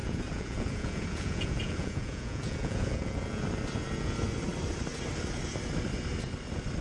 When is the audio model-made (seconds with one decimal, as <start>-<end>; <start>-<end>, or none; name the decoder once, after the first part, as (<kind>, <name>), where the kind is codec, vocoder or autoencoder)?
0.0-3.4 (vocoder, Vocos)